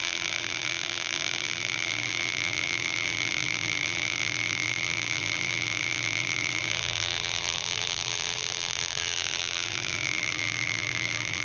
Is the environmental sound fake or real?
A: fake